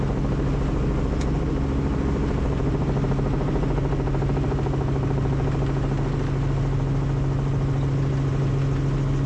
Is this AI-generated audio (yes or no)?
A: no